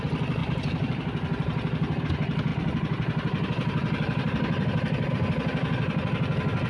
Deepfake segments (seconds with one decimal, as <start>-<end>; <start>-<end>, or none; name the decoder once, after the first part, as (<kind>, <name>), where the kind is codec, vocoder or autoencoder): 0.4-2.0 (vocoder, BigVGAN v2)